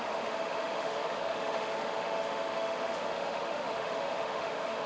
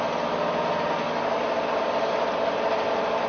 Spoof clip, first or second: first